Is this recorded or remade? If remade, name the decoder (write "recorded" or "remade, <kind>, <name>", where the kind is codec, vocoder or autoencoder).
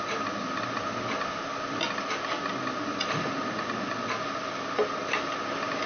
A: recorded